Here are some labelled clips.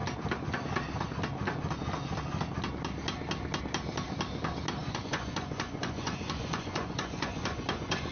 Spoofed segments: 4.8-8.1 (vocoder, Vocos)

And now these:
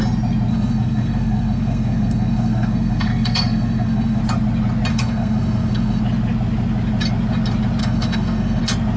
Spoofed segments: 0.5-4.2 (codec, SNAC); 4.9-6.0; 7.8-8.6

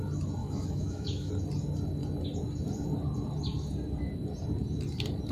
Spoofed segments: 0.4-1.3 (autoencoder, DAC-VAE)

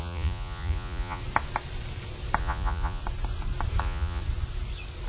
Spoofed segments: 0.0-1.2 (vocoder, Vocos); 2.4-3.0; 3.8-4.2

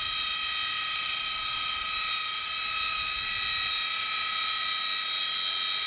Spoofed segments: none

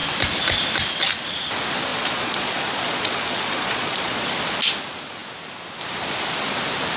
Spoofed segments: 1.9-4.3 (vocoder, Vocos)

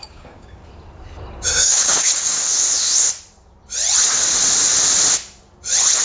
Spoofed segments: 0.0-0.6 (codec, DAC); 1.5-2.4

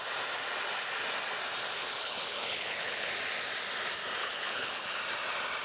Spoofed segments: 1.8-3.1 (codec, HILCodec); 4.2-5.0